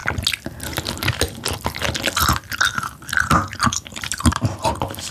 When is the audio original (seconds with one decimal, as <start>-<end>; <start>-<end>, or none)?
0.0-2.4